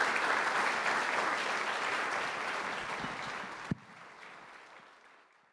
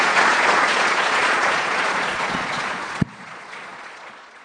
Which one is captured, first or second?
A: first